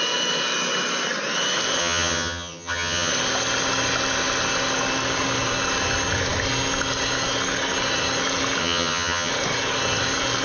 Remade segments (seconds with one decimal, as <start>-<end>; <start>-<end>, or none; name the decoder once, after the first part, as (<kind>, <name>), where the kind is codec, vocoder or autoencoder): 1.8-3.1 (vocoder, HiFi-GAN); 8.6-9.3